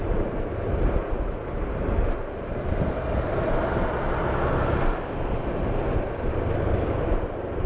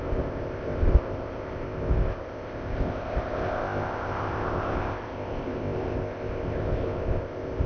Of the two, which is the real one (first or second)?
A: first